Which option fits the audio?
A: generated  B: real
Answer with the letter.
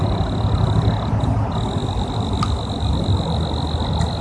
B